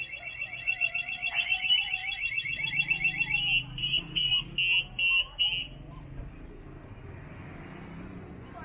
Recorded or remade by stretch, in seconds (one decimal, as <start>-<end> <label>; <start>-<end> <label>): 0.0-2.0 remade; 2.0-3.8 recorded; 3.8-4.3 remade; 4.3-8.0 recorded; 8.0-8.6 remade